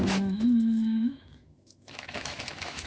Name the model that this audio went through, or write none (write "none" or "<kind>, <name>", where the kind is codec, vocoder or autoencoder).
autoencoder, DAC-VAE